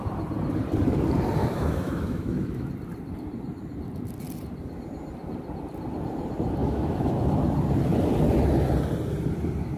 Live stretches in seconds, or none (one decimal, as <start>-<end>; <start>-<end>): 0.0-1.4; 2.7-6.6; 7.1-9.8

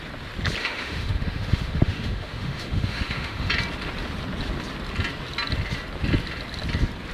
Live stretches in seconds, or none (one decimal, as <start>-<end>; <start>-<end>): 0.0-0.6; 3.5-7.1